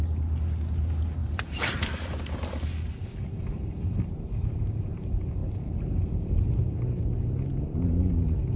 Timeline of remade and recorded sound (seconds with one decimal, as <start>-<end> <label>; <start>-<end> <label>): 0.0-1.2 recorded; 1.2-3.8 remade; 3.8-5.4 recorded; 5.4-6.6 remade; 6.6-7.5 recorded; 7.5-8.1 remade; 8.1-8.6 recorded